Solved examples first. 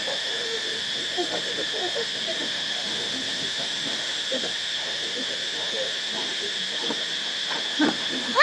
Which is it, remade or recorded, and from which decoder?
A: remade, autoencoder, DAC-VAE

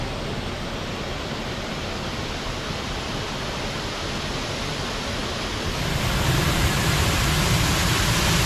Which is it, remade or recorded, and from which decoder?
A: recorded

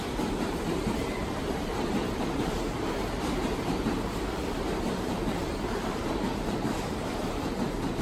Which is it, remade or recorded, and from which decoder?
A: remade, vocoder, BigVGAN v2